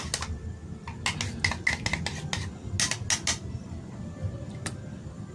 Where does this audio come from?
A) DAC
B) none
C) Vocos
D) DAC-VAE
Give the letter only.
B